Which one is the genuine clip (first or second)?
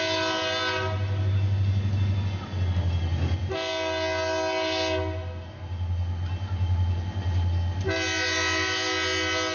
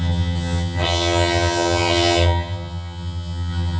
first